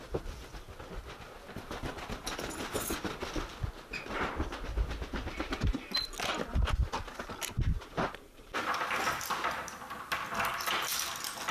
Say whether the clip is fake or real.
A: real